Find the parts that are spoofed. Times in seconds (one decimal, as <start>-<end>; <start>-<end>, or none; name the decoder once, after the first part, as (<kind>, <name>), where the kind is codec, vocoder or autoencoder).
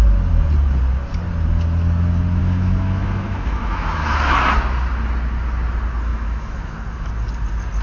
2.4-4.4 (autoencoder, DAC-VAE); 6.1-7.1